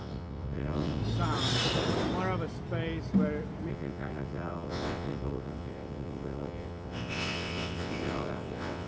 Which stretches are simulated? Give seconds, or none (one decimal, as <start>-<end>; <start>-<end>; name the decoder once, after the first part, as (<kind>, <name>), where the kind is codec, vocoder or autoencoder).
0.0-1.0 (vocoder, WaveNeXt); 3.7-8.9